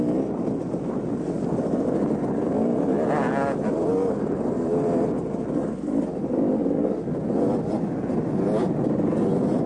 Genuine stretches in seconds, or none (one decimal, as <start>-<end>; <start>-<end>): 0.0-9.7

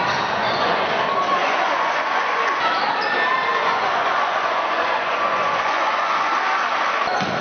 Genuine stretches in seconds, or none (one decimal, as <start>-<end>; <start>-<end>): 0.0-0.4; 1.0-1.4; 2.6-3.5; 6.3-7.4